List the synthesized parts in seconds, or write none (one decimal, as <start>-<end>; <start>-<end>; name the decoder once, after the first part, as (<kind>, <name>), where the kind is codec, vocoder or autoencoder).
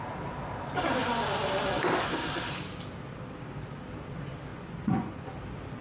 4.5-5.3 (vocoder, Vocos)